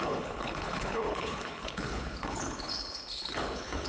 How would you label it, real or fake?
fake